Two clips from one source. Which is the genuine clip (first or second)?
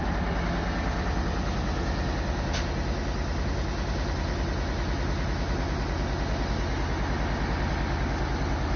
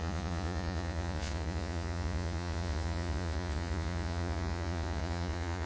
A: first